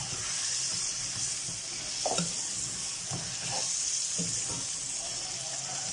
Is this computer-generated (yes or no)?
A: no